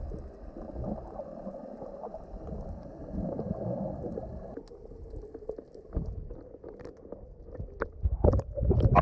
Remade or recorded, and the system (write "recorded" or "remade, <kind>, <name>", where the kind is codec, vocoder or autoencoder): recorded